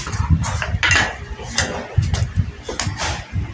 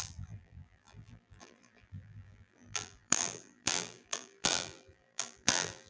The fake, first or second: second